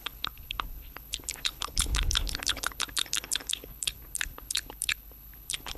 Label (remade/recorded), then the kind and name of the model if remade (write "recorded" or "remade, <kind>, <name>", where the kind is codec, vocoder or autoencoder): remade, codec, HILCodec